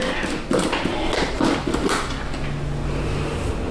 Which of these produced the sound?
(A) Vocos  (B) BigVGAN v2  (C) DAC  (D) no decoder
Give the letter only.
D